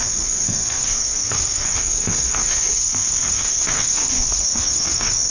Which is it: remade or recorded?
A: remade